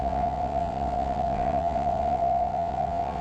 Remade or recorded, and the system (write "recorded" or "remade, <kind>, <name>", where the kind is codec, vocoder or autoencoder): remade, vocoder, WaveNeXt